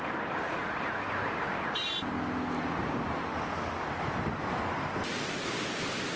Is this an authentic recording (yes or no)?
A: yes